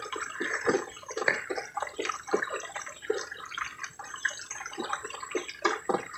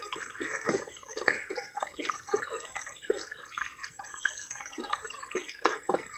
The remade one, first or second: second